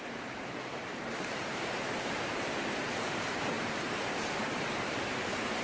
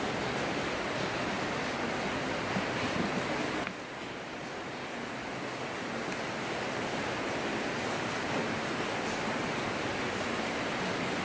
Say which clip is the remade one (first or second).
first